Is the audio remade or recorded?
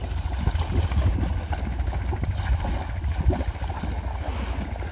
recorded